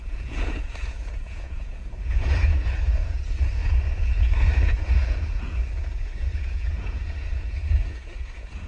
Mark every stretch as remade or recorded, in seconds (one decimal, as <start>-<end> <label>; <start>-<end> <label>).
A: 0.0-8.7 remade